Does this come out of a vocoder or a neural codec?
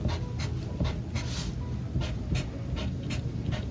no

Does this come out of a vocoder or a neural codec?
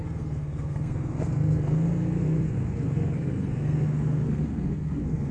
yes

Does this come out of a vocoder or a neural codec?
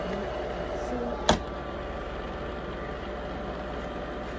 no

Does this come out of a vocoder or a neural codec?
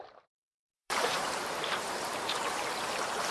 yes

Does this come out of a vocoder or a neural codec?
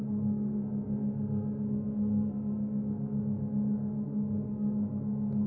yes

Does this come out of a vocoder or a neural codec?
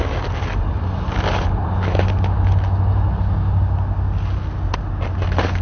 no